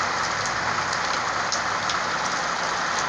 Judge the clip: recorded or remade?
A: recorded